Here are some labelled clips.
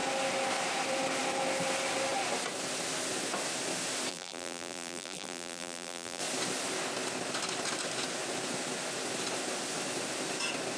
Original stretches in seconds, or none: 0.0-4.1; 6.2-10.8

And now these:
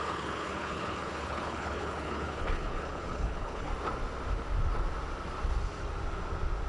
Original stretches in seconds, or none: 3.7-6.7

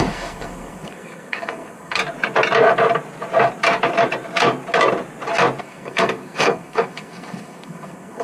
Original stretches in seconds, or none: 2.0-5.6

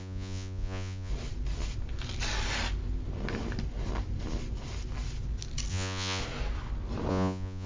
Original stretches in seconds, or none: 1.1-5.7; 6.2-7.1